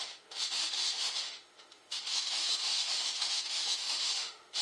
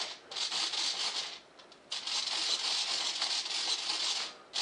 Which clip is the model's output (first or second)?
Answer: first